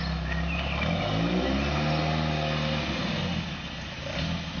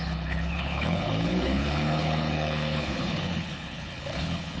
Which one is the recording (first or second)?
first